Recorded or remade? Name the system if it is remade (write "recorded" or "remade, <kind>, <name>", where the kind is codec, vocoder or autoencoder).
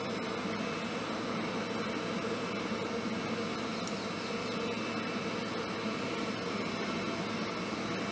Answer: recorded